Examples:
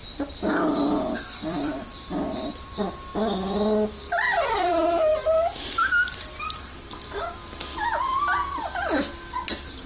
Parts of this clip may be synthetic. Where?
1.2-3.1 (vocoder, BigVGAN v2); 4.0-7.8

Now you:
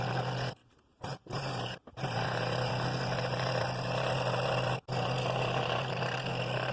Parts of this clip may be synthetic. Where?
0.6-2.7 (vocoder, BigVGAN v2)

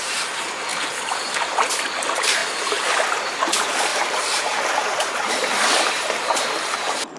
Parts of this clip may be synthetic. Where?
0.0-2.4 (vocoder, BigVGAN v2); 3.2-7.2

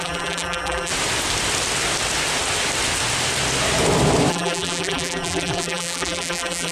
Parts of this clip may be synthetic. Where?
0.0-0.9 (vocoder, BigVGAN v2); 4.3-6.7

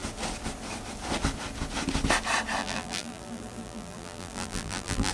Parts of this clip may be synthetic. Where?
2.6-5.1 (vocoder, BigVGAN v2)

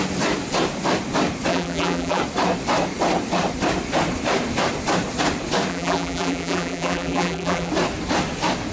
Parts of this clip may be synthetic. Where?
1.5-2.2 (vocoder, BigVGAN v2); 5.7-7.7

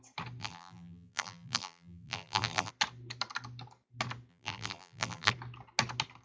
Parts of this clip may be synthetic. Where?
0.4-2.7 (vocoder, BigVGAN v2); 4.3-5.3